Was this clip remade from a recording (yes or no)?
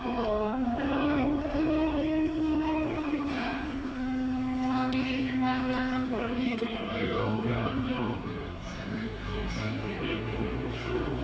yes